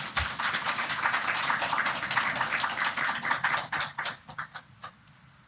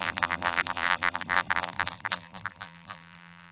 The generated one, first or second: second